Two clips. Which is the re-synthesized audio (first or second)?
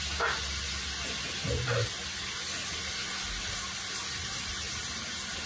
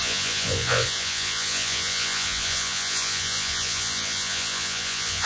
second